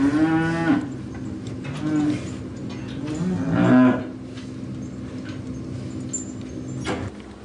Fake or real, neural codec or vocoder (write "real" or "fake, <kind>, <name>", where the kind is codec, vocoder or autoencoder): real